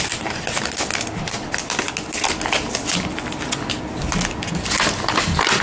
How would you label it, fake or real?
real